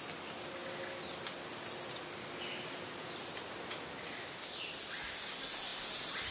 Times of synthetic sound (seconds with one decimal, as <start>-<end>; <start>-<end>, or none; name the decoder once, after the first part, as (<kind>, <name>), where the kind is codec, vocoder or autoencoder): 0.0-0.6 (vocoder, BigVGAN v2); 4.4-5.7